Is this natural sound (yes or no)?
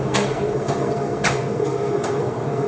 no